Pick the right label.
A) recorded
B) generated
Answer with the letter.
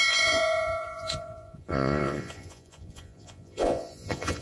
B